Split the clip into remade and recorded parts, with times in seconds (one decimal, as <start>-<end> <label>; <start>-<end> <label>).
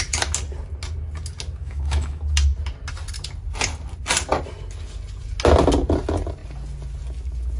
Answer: 0.0-1.6 recorded; 1.6-2.2 remade; 2.2-7.6 recorded